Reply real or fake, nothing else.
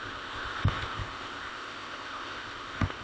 fake